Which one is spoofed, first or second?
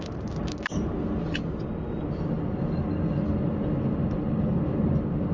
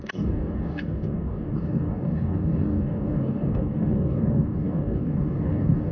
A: second